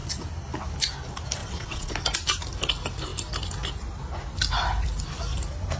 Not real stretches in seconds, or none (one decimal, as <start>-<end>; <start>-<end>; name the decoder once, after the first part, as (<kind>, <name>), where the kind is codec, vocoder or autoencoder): 1.4-1.9 (vocoder, WaveNeXt)